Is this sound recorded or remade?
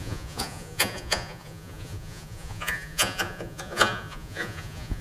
remade